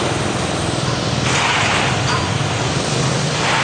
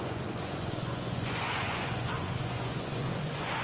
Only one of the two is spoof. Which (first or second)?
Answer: second